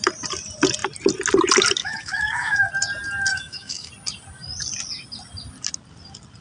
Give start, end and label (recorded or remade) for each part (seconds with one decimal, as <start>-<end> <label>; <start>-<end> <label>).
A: 0.0-1.8 recorded; 1.8-2.7 remade; 2.7-3.3 recorded; 3.3-3.9 remade; 3.9-6.4 recorded